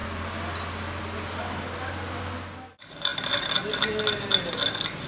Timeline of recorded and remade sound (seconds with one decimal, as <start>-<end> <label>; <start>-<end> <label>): 0.0-5.1 recorded